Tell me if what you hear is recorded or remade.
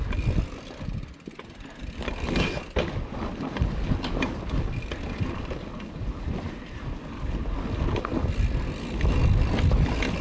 recorded